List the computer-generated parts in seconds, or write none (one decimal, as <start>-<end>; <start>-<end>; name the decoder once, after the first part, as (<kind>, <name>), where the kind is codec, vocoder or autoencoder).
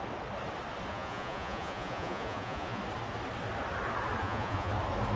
0.9-2.8 (vocoder, Vocos); 4.2-4.7